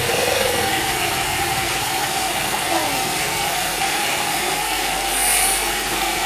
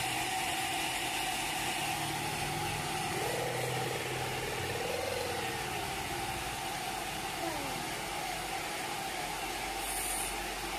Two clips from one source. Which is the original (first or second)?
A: second